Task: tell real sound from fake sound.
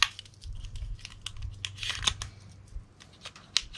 real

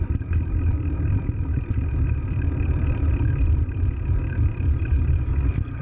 fake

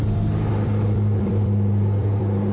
fake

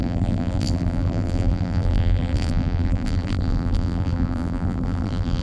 fake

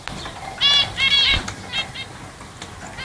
real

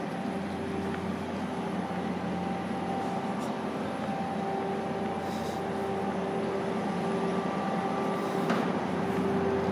real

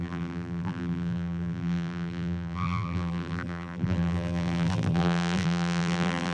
fake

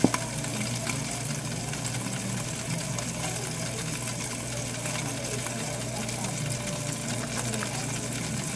real